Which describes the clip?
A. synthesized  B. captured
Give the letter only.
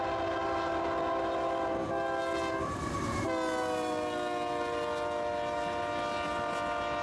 B